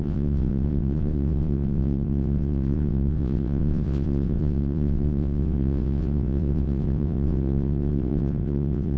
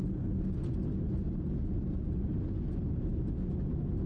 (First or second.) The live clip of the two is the second